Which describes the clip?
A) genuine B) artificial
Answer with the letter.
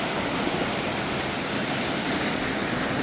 A